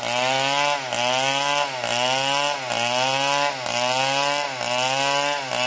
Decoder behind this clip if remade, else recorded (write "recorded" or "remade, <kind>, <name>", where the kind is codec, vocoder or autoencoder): recorded